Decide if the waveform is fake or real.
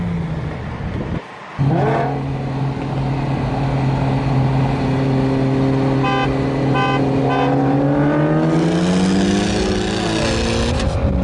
real